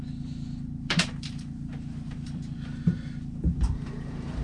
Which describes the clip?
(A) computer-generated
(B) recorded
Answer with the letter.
A